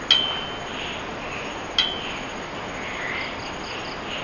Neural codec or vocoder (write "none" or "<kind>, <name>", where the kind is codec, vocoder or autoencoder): none